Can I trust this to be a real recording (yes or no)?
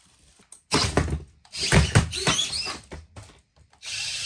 yes